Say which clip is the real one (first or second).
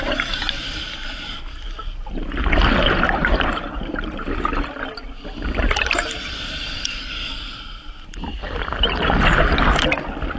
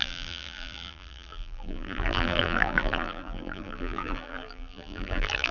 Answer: first